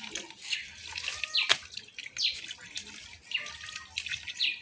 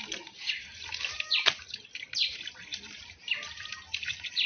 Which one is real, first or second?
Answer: first